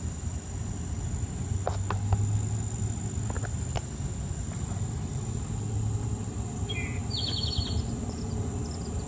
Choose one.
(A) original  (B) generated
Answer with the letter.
A